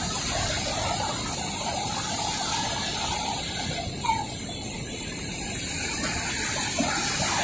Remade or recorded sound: recorded